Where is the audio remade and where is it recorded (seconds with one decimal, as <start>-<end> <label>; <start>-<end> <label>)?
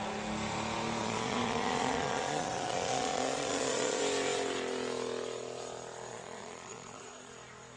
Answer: 0.0-1.0 recorded; 1.0-4.0 remade; 4.0-6.1 recorded; 6.1-7.3 remade; 7.3-7.8 recorded